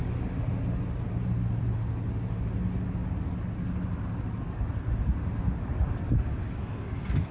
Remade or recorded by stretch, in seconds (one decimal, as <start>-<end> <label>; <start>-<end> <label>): 0.0-6.6 recorded; 6.6-7.3 remade